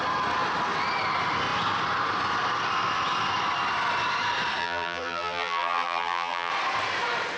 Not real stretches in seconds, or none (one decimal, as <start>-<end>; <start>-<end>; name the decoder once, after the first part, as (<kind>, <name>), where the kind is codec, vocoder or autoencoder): 4.6-6.5 (vocoder, BigVGAN v2)